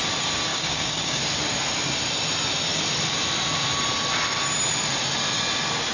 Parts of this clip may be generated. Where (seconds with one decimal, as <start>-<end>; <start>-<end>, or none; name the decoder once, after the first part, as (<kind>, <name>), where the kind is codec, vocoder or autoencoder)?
0.5-1.2 (codec, DAC)